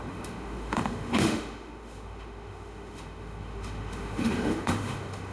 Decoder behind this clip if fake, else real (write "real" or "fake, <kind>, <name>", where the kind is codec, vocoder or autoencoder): fake, autoencoder, DAC-VAE